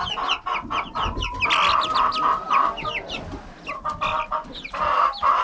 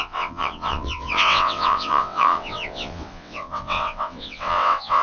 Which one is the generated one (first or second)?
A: second